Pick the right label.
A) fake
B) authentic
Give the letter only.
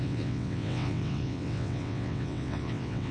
A